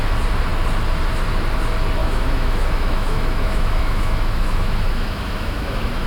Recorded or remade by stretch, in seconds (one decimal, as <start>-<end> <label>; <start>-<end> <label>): 0.0-2.0 recorded; 2.0-6.1 remade